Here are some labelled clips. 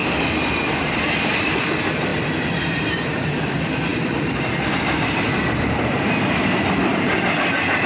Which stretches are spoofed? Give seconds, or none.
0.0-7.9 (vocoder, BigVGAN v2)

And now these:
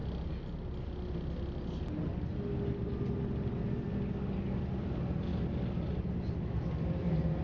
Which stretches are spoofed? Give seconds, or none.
none

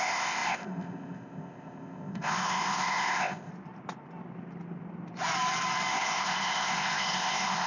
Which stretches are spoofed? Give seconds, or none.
0.0-3.5 (codec, ZipCodec); 5.9-7.7